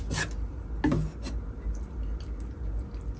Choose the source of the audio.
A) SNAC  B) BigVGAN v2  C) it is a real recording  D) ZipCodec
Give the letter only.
C